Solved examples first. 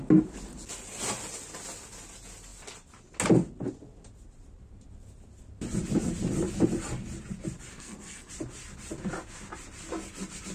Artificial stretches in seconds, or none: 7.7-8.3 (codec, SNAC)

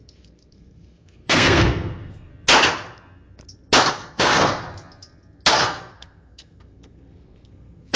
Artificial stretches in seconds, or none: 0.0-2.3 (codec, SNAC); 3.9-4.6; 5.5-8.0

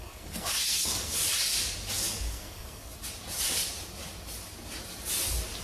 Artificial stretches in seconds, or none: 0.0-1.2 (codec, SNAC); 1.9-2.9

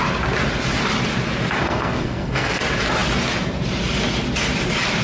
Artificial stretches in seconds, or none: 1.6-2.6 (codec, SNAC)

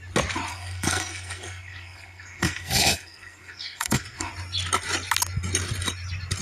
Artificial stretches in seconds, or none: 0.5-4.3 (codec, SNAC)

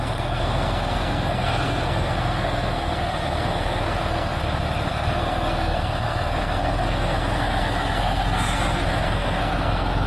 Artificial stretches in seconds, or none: 0.0-4.4 (codec, SNAC); 4.9-10.1